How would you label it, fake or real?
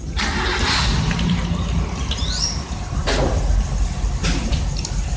fake